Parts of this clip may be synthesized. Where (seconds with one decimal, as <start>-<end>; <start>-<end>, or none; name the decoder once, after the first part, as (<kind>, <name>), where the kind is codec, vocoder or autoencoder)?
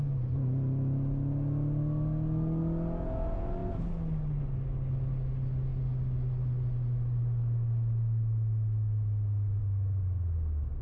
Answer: none